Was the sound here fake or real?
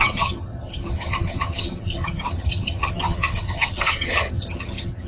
fake